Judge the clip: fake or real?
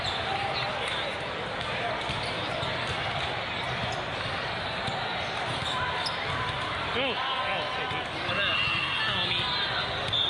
real